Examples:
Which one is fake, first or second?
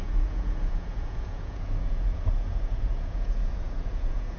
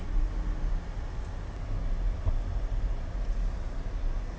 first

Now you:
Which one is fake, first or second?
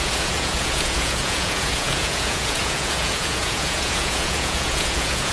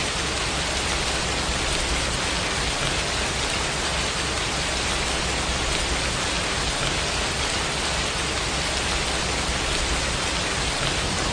first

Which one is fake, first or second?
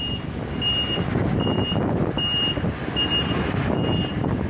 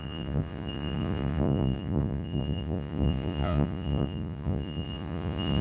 second